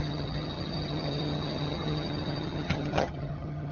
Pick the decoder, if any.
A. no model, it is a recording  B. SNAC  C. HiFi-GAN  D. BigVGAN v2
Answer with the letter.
C